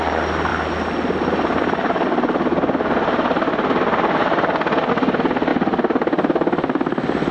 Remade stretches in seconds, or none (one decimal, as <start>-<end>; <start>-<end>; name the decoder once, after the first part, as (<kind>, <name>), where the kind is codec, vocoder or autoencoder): none